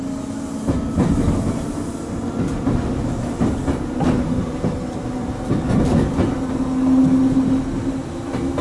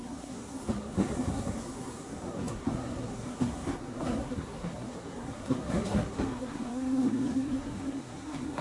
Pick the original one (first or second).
first